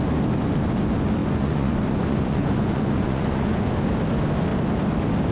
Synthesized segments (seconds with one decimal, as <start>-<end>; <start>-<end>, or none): 1.2-3.7